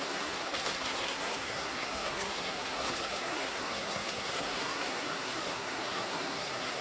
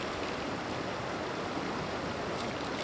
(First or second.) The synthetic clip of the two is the first